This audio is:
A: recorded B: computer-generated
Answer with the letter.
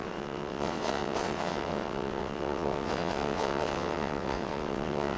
B